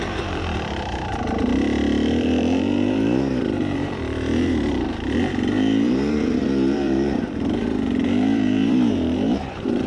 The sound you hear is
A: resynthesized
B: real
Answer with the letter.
A